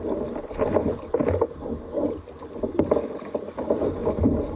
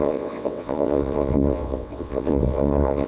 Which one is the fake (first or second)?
second